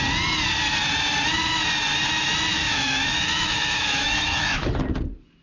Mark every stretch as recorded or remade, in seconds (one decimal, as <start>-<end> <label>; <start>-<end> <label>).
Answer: 0.0-2.5 recorded; 2.5-4.7 remade; 4.7-5.4 recorded